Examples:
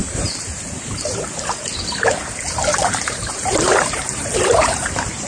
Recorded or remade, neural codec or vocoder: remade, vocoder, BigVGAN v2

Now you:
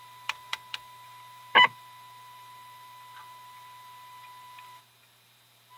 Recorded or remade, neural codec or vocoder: remade, vocoder, BigVGAN v2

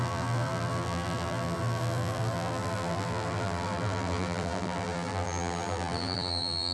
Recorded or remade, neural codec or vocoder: remade, vocoder, BigVGAN v2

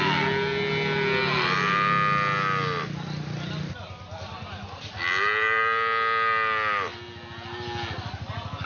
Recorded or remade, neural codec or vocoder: recorded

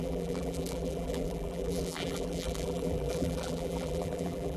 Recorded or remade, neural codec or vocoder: remade, vocoder, BigVGAN v2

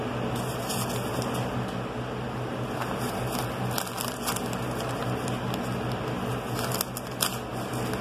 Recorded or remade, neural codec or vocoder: recorded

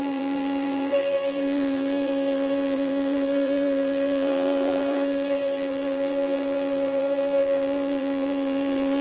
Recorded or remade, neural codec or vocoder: remade, vocoder, BigVGAN v2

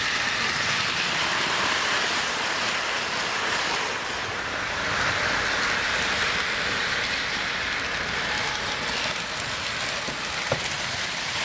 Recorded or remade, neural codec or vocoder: recorded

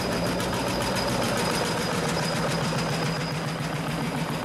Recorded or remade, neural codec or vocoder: recorded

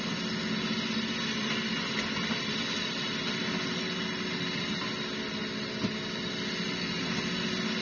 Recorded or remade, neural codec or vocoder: recorded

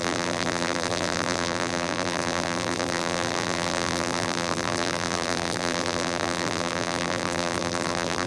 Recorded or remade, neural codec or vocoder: remade, vocoder, BigVGAN v2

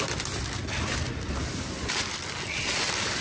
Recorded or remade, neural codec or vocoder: recorded